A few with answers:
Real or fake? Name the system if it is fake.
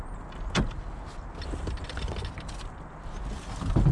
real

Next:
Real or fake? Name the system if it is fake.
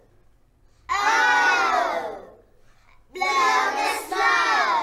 real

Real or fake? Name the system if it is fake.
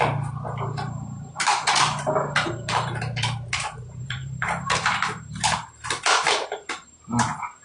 fake, vocoder, BigVGAN v2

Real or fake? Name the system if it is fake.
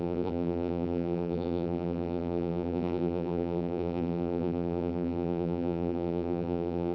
fake, vocoder, BigVGAN v2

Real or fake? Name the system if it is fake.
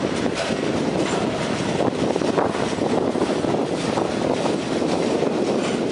fake, vocoder, BigVGAN v2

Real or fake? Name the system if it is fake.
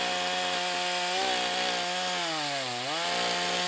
real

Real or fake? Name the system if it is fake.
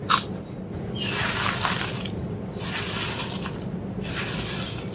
real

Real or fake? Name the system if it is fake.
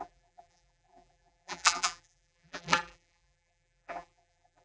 fake, vocoder, BigVGAN v2